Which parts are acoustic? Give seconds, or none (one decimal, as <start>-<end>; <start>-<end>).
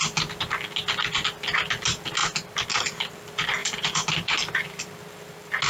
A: 0.0-3.6; 4.8-5.7